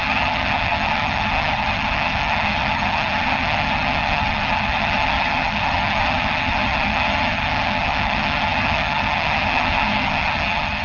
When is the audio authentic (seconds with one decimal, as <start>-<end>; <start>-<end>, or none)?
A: none